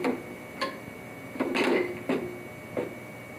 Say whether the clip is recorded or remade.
recorded